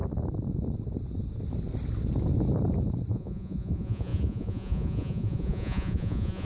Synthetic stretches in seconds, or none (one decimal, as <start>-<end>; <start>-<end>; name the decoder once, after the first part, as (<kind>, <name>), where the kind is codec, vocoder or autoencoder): 3.1-6.4 (vocoder, Vocos)